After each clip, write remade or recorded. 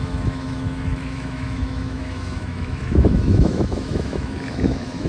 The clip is remade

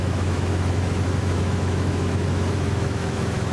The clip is remade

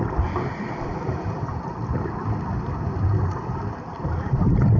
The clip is recorded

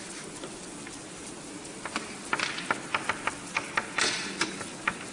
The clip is recorded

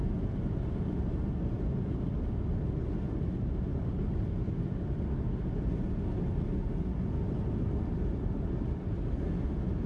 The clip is recorded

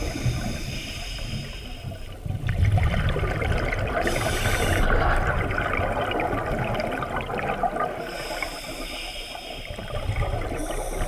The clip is recorded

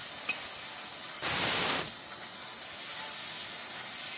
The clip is recorded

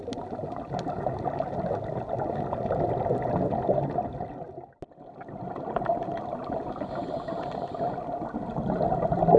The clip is recorded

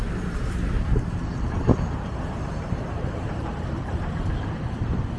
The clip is remade